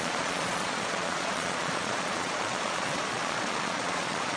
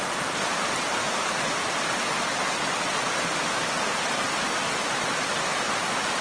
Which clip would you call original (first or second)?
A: second